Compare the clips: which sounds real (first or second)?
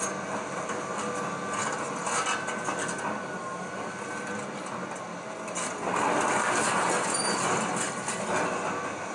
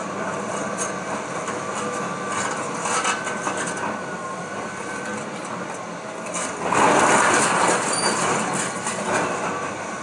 first